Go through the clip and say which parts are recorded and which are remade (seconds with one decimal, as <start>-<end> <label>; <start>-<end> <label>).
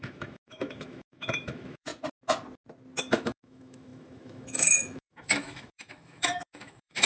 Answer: 0.0-1.9 remade; 1.9-3.0 recorded; 3.0-7.1 remade